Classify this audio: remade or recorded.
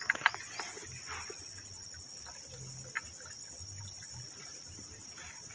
recorded